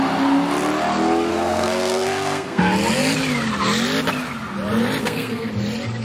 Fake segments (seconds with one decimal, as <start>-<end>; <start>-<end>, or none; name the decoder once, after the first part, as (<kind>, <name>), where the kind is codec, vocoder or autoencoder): 1.3-2.6 (codec, SNAC); 5.0-5.5